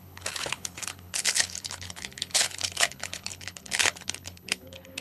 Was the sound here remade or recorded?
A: remade